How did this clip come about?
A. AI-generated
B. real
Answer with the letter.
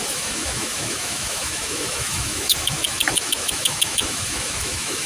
A